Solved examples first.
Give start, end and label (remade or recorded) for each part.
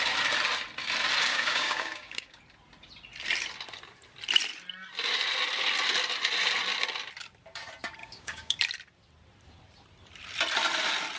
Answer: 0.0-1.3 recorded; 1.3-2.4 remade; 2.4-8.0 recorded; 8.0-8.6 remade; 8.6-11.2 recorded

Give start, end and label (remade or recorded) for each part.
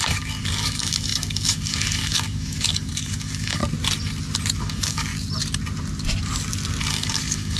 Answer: 0.0-3.6 remade; 3.6-4.6 recorded; 4.6-5.1 remade; 5.1-6.9 recorded; 6.9-7.6 remade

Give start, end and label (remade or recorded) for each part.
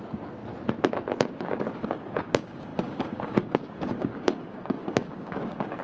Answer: 0.0-0.4 remade; 0.4-1.1 recorded; 1.1-5.8 remade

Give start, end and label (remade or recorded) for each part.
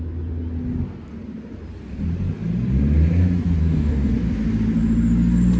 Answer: 0.0-3.6 recorded; 3.6-4.1 remade; 4.1-5.6 recorded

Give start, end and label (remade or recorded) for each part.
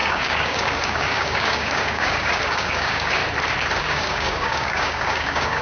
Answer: 0.0-3.2 remade; 3.2-3.8 recorded; 3.8-5.6 remade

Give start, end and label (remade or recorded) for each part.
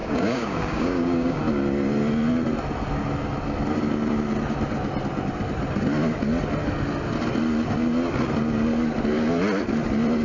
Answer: 0.0-1.4 remade; 1.4-10.2 recorded